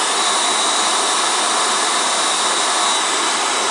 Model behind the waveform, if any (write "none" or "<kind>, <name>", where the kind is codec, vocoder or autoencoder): none